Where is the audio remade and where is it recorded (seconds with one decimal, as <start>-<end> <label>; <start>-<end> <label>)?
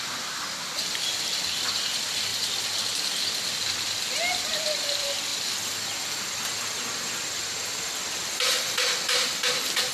0.0-9.9 recorded